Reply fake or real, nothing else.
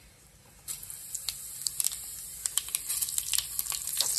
real